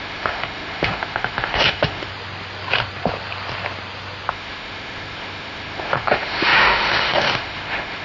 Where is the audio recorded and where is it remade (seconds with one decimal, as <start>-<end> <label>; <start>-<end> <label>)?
0.0-2.1 remade; 2.1-4.3 recorded; 4.3-8.0 remade